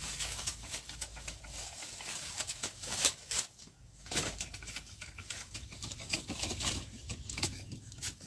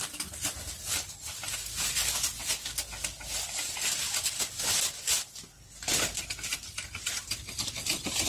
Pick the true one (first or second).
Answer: second